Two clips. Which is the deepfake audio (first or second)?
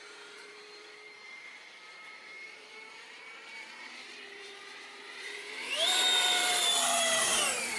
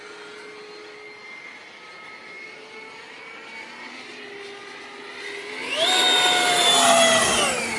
first